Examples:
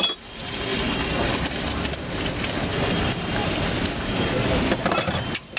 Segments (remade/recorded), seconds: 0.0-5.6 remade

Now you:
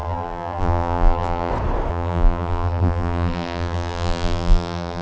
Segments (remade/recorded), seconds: 0.0-1.5 remade; 1.5-1.9 recorded; 1.9-5.0 remade

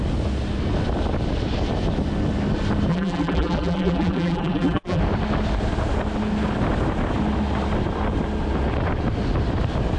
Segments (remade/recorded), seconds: 0.0-2.9 recorded; 2.9-5.0 remade; 5.0-10.0 recorded

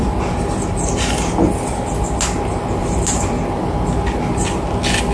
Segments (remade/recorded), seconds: 0.0-1.3 remade; 1.3-2.8 recorded; 2.8-3.4 remade; 3.4-5.1 recorded